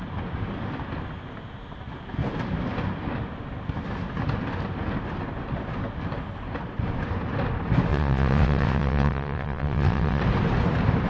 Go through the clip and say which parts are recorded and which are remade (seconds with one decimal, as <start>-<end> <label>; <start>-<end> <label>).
0.0-7.9 recorded; 7.9-10.2 remade; 10.2-11.1 recorded

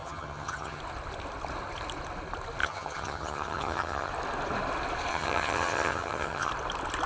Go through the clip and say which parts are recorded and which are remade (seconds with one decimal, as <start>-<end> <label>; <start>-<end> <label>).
0.0-0.8 remade; 0.8-2.6 recorded; 2.6-4.1 remade; 4.1-5.1 recorded; 5.1-6.5 remade; 6.5-7.1 recorded